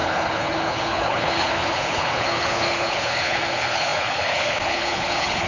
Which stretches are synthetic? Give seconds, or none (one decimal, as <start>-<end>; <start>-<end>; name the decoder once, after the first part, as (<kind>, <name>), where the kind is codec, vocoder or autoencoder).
0.0-5.5 (codec, HILCodec)